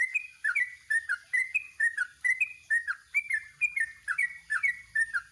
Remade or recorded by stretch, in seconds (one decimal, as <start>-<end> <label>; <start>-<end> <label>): 0.0-1.4 remade; 1.4-4.1 recorded; 4.1-4.5 remade; 4.5-5.3 recorded